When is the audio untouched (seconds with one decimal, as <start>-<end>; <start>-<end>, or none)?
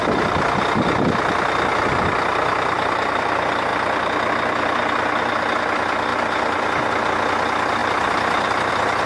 0.0-6.1; 7.1-7.8; 8.7-9.1